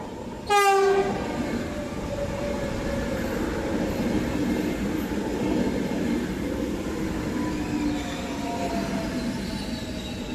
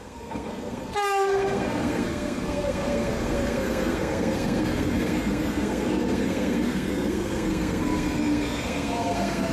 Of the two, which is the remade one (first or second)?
second